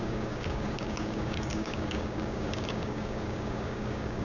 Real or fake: fake